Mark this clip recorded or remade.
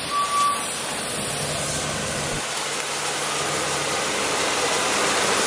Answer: recorded